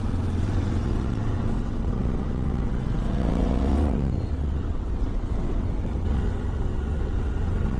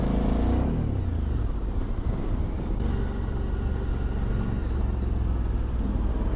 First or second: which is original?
second